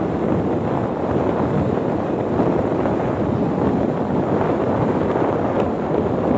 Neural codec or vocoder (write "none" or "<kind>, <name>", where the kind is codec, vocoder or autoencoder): none